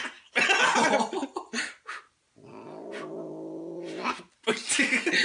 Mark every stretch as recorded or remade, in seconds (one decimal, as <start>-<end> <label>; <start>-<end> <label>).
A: 0.0-5.2 recorded